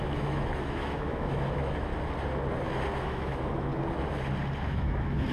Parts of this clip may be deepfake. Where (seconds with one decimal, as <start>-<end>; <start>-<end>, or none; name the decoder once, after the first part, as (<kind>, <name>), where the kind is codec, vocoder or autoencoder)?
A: 0.0-1.9 (autoencoder, DAC-VAE); 3.0-3.7; 4.6-5.3